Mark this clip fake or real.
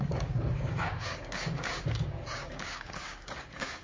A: fake